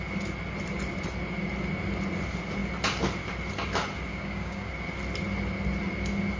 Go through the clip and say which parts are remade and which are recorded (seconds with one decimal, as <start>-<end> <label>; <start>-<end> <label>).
0.0-4.1 recorded; 4.1-4.7 remade; 4.7-6.4 recorded